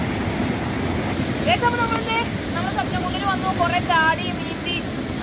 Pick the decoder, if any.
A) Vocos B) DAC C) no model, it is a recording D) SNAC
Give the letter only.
C